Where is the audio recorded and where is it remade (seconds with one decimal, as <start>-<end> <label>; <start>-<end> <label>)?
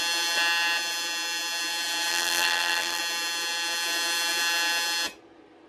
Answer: 0.0-2.1 recorded; 2.1-3.0 remade; 3.0-5.7 recorded